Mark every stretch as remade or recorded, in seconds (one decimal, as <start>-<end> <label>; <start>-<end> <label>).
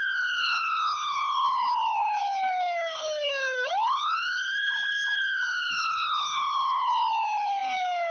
0.0-8.1 remade